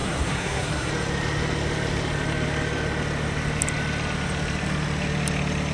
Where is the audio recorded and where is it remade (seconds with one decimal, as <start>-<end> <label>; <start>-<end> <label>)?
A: 0.0-0.9 remade; 0.9-5.7 recorded